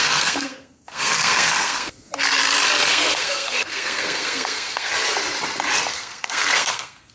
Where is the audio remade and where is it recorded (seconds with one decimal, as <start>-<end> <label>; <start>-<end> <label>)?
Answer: 0.0-2.1 remade; 2.1-2.9 recorded; 2.9-4.9 remade; 4.9-5.9 recorded; 5.9-7.1 remade